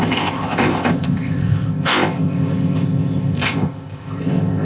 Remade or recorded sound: remade